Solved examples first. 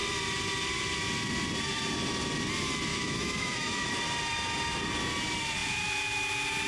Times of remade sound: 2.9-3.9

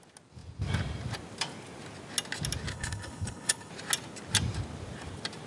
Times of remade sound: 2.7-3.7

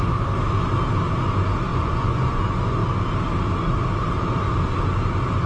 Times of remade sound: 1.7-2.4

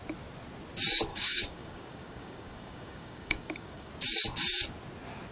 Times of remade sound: 1.1-3.9

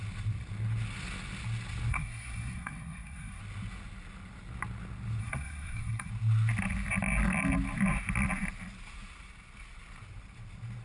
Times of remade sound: 1.9-3.4; 5.2-6.1